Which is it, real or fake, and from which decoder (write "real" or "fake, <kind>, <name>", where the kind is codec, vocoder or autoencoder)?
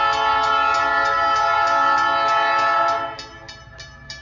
real